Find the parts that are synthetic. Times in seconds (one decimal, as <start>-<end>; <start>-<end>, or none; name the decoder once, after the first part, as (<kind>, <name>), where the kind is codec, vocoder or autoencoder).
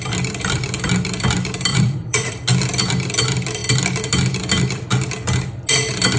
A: 1.7-2.3 (vocoder, Vocos)